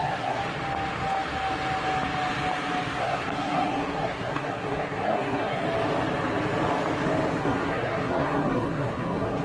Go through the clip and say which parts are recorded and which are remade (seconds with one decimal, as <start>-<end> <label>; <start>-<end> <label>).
0.0-0.4 remade; 0.4-3.0 recorded; 3.0-5.6 remade; 5.6-7.4 recorded; 7.4-9.4 remade